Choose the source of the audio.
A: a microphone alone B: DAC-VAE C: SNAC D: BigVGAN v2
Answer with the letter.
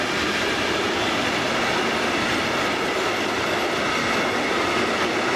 A